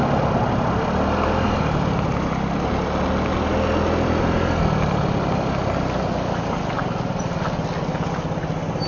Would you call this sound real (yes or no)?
yes